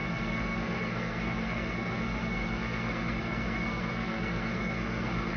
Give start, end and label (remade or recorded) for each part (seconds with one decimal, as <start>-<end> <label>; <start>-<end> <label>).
0.0-5.4 remade